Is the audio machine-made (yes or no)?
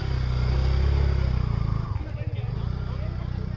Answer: no